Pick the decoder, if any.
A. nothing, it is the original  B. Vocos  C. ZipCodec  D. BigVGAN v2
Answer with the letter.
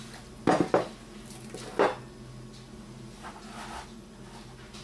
A